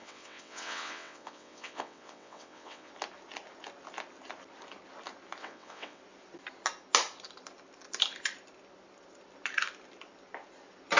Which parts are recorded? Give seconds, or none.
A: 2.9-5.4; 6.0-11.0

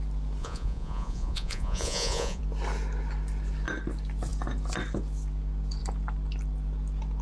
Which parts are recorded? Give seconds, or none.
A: 0.0-0.4; 2.4-7.2

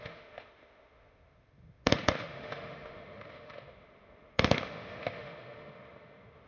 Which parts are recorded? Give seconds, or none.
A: none

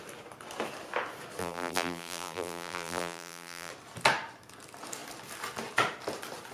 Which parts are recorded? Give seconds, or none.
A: 0.0-1.4; 3.7-6.5

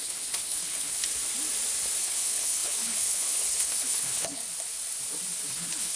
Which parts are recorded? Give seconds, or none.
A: 1.0-2.0; 4.4-5.5